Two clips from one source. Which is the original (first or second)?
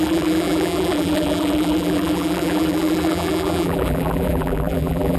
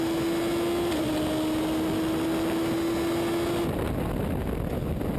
second